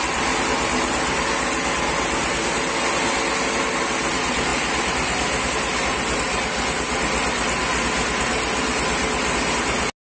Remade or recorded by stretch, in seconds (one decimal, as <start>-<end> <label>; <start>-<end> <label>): 0.0-10.0 recorded